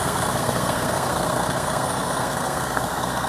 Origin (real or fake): fake